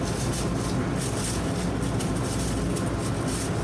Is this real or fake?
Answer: real